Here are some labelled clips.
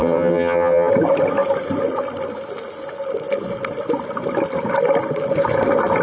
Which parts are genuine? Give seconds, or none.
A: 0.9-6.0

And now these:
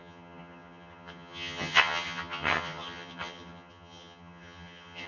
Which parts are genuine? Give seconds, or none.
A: none